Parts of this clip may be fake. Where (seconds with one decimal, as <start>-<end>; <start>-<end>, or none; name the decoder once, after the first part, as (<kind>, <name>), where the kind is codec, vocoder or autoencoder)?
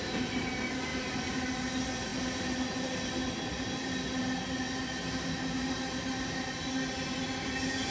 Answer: 0.9-1.5 (vocoder, BigVGAN v2)